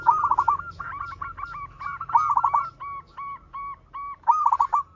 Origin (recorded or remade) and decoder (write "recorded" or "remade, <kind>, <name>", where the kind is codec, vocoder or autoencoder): recorded